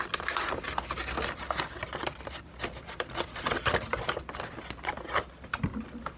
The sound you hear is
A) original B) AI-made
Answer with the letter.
A